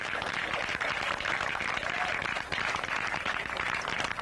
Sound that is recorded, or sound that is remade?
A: remade